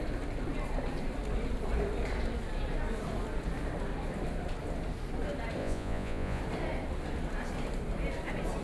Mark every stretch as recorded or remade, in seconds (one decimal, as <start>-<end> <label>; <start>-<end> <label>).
0.0-5.6 recorded; 5.6-6.4 remade; 6.4-8.6 recorded

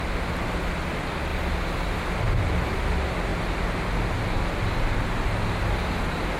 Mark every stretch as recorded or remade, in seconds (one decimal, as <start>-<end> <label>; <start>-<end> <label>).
0.0-6.4 recorded

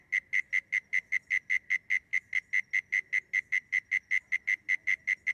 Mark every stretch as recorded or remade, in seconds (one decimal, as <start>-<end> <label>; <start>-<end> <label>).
0.0-5.3 recorded

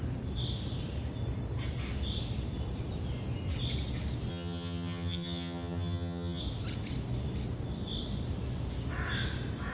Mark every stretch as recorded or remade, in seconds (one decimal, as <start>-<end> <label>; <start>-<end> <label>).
0.0-4.3 recorded; 4.3-6.4 remade; 6.4-9.7 recorded

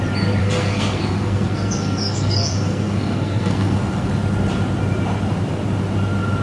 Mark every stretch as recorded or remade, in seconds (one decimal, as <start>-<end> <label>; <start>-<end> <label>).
0.0-0.4 recorded; 0.4-4.1 remade; 4.1-6.4 recorded